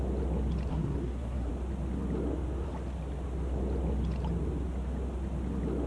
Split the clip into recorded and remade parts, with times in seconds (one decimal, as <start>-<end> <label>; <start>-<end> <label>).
0.0-0.7 recorded; 0.7-1.5 remade; 1.5-5.9 recorded